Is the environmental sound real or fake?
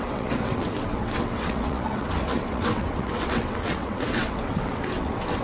fake